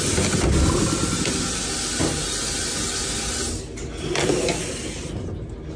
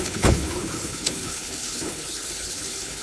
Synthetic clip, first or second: second